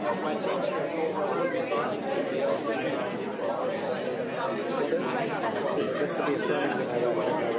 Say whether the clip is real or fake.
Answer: real